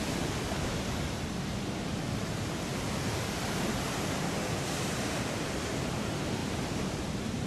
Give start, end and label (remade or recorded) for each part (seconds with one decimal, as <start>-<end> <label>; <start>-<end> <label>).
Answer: 0.0-6.4 recorded; 6.4-7.5 remade